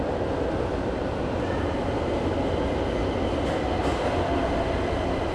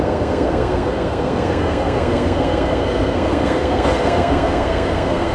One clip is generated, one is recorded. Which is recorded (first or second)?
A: first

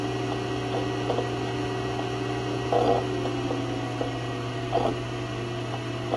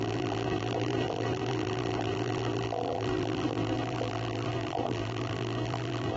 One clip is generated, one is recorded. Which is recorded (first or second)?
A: first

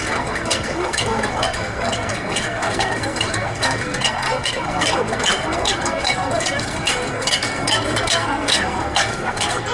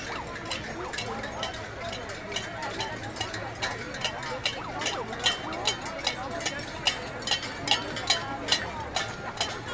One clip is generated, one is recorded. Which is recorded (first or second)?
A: second